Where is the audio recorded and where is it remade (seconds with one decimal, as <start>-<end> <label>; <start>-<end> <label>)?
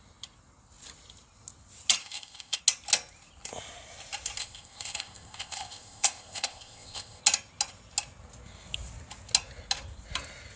0.0-2.0 recorded; 2.0-2.6 remade; 2.6-4.4 recorded; 4.4-7.2 remade; 7.2-10.6 recorded